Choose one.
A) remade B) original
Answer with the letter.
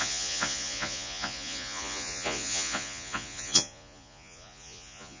A